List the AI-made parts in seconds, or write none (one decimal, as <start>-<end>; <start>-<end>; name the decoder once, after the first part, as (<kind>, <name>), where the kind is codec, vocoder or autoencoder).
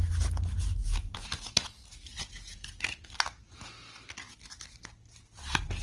none